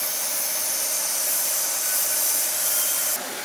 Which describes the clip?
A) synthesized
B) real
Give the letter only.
B